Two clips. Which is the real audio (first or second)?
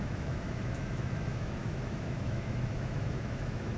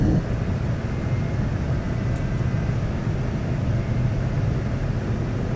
second